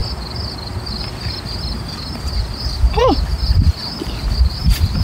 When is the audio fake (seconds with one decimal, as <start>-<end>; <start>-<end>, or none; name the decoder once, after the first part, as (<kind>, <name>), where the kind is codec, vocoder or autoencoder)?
none